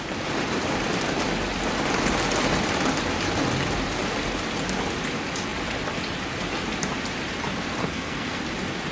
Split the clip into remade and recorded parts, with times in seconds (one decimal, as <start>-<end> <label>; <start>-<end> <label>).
0.0-7.8 recorded; 7.8-8.4 remade; 8.4-8.9 recorded